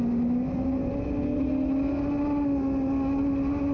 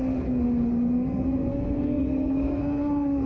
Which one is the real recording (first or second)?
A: first